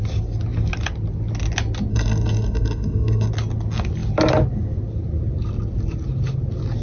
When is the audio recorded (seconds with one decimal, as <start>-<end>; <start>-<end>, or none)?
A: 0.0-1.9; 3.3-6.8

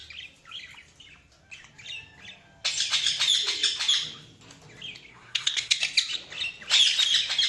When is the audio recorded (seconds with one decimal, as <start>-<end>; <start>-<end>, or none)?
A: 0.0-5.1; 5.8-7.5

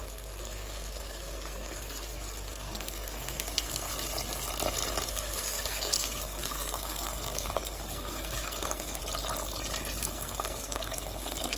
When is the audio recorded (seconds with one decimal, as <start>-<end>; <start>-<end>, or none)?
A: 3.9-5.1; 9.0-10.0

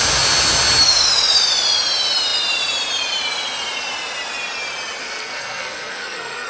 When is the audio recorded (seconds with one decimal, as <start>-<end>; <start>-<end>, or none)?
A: 0.0-5.0

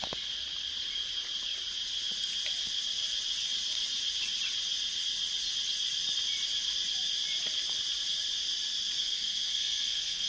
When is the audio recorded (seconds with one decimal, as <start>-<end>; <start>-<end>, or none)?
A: 0.0-9.0

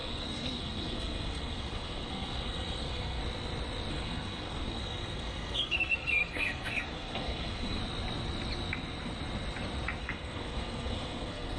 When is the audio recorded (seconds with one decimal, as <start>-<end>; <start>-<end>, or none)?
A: 3.2-3.9; 7.8-10.0

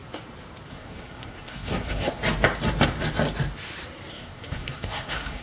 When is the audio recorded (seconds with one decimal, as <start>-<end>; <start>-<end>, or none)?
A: 0.0-0.7; 2.2-4.1